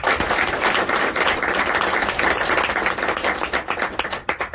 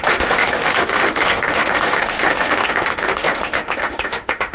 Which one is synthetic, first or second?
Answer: second